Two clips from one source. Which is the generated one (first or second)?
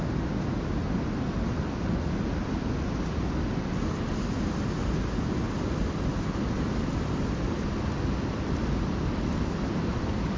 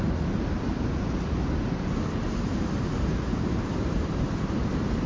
second